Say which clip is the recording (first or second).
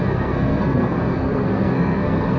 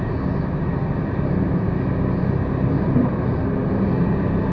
second